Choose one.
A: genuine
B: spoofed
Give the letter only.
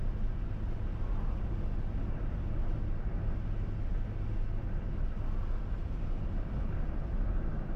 A